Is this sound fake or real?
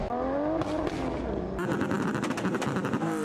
real